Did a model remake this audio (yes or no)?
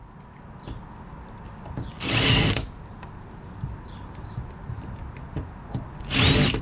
no